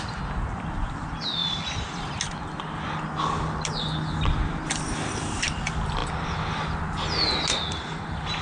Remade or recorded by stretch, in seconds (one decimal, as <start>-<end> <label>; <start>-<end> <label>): 0.0-8.4 recorded